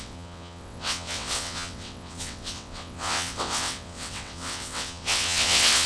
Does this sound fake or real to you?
fake